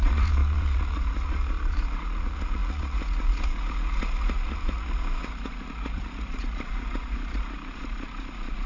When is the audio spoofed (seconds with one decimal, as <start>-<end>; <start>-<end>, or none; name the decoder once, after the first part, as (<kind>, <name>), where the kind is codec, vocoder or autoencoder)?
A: 0.0-8.7 (vocoder, Vocos)

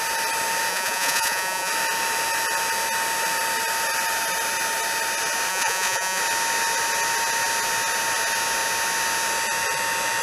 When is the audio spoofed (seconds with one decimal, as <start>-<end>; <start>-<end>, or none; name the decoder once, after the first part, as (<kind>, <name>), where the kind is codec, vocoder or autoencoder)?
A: 0.7-1.7 (vocoder, Vocos); 5.5-6.2

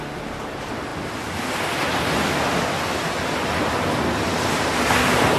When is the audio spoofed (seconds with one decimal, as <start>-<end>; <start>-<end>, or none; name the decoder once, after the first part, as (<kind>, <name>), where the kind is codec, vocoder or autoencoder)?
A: 0.0-0.9 (vocoder, BigVGAN v2); 3.1-5.4

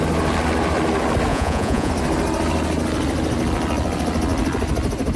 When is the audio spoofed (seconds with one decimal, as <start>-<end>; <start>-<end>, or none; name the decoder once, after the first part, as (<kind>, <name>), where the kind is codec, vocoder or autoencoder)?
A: 1.3-1.9 (vocoder, Vocos)

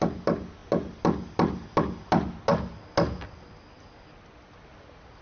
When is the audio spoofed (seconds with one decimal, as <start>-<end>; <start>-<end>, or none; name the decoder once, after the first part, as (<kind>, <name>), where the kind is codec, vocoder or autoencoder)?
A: none

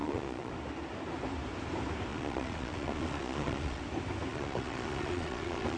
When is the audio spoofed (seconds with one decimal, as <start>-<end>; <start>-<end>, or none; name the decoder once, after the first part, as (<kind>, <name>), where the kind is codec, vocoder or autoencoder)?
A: 0.0-0.5 (vocoder, Vocos); 2.1-3.8; 4.3-5.8